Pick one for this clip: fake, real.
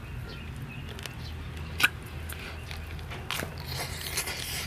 real